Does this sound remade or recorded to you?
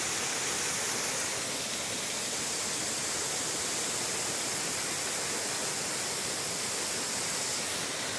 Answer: recorded